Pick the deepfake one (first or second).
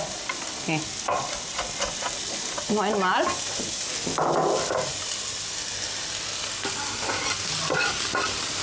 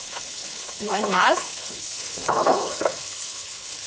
second